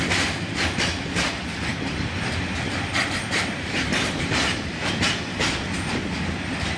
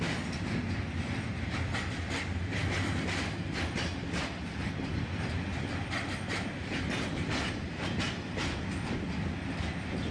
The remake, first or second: first